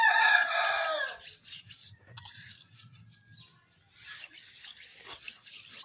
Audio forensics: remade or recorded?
recorded